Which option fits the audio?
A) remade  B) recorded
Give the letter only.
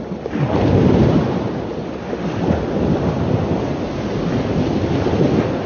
B